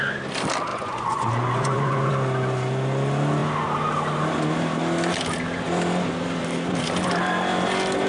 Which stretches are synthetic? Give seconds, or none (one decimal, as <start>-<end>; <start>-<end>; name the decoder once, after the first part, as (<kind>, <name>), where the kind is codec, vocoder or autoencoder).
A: 0.7-2.1 (vocoder, Vocos)